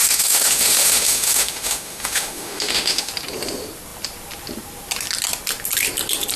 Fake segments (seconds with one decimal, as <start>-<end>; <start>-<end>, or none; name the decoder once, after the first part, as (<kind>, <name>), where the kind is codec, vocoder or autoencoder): 0.0-3.1 (autoencoder, DAC-VAE)